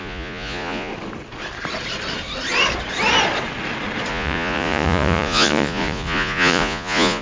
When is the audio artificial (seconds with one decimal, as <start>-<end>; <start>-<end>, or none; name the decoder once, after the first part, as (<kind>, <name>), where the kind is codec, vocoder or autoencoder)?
0.0-0.9 (vocoder, Vocos); 4.1-7.2